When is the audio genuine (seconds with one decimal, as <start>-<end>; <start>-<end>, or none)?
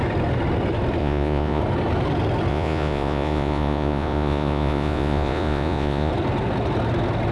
0.0-1.0; 1.6-2.5; 6.1-7.3